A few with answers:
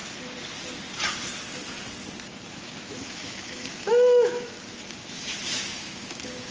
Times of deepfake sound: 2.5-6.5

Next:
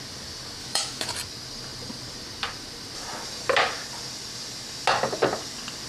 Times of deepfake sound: 0.6-1.1

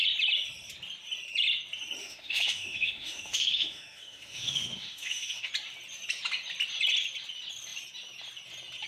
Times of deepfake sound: 2.0-5.5

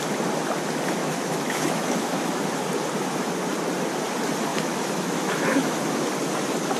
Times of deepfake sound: 1.0-2.6; 4.5-5.8

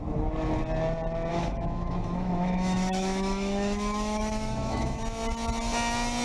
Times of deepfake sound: 1.3-5.0